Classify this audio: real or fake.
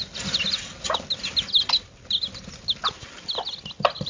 real